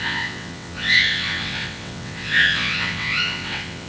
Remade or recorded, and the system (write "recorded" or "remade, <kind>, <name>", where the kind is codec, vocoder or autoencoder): remade, vocoder, WaveNeXt